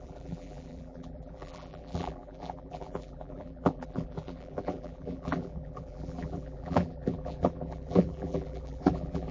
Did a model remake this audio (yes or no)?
yes